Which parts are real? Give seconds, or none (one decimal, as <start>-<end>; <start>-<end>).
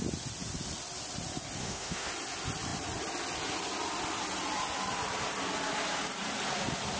0.0-1.6; 2.1-7.0